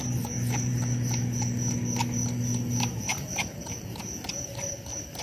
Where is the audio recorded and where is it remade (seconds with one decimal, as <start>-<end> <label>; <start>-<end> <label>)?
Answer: 0.0-4.3 recorded; 4.3-5.2 remade